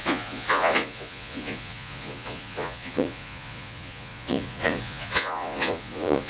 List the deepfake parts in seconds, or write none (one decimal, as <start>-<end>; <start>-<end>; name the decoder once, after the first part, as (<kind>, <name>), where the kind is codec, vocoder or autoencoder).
0.0-6.3 (vocoder, Vocos)